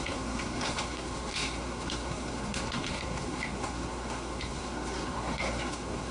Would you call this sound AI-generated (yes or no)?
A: yes